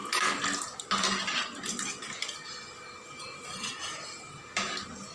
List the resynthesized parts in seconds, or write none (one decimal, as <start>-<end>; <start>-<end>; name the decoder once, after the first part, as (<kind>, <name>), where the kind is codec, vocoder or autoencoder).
3.1-5.1 (vocoder, BigVGAN v2)

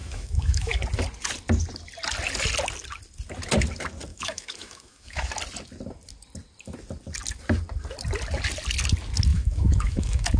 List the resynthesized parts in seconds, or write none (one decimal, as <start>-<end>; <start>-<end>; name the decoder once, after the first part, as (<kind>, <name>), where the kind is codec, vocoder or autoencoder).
0.0-0.8 (autoencoder, DAC-VAE); 4.1-5.3; 9.3-10.4

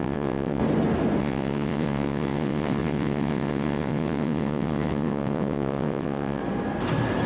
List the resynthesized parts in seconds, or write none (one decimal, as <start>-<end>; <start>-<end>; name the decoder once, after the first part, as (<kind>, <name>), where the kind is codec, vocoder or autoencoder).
0.0-0.6 (vocoder, WaveNeXt); 1.2-6.4